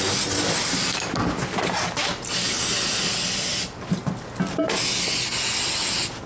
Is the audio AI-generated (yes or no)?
no